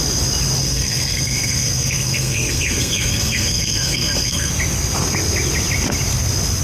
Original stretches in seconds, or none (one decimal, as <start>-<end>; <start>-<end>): 0.0-0.6; 4.5-6.6